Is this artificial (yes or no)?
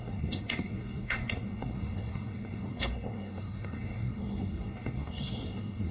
yes